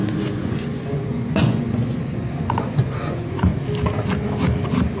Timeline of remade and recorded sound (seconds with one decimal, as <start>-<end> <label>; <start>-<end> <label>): 0.0-3.5 remade; 3.5-5.0 recorded